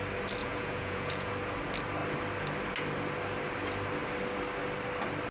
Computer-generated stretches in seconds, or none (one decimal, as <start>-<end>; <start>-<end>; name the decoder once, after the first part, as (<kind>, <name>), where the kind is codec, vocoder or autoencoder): 0.4-1.3 (vocoder, Vocos)

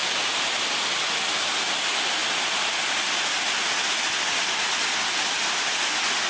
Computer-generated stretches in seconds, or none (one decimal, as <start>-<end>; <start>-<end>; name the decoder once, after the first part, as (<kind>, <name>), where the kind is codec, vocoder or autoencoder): 0.0-0.6 (vocoder, BigVGAN v2)

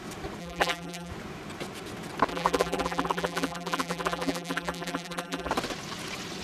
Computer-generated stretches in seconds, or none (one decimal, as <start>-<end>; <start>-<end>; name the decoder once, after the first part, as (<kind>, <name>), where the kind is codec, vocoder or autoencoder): 0.4-1.1 (vocoder, BigVGAN v2); 2.3-5.5